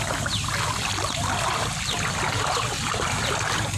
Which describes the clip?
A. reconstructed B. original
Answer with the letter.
B